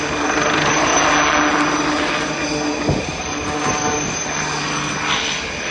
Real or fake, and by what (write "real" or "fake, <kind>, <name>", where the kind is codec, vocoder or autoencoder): real